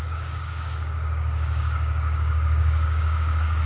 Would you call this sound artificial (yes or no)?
yes